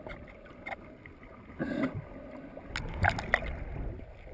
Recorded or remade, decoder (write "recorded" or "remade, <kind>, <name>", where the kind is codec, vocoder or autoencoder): recorded